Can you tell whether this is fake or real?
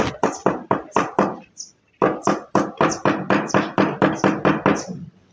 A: real